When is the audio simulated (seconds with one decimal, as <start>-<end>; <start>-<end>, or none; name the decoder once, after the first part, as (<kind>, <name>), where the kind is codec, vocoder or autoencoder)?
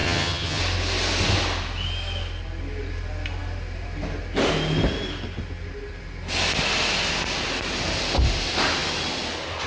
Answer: 0.0-0.6 (vocoder, HiFi-GAN)